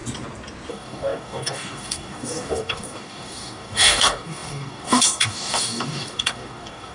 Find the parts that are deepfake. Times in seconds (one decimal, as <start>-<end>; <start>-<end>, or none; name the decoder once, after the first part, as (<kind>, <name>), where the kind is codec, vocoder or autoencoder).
0.7-6.9 (codec, DAC)